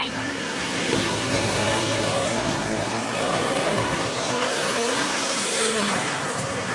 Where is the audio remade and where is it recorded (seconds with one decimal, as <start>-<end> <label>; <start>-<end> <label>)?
0.0-6.7 remade